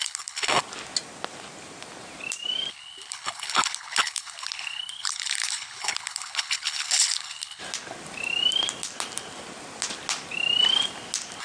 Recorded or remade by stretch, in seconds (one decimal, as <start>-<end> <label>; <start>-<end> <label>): 0.0-0.6 remade; 0.6-2.7 recorded; 2.7-7.6 remade; 7.6-11.4 recorded